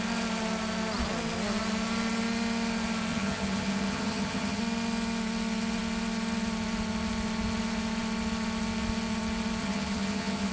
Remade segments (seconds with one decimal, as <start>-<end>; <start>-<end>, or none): 3.1-4.6; 9.6-10.5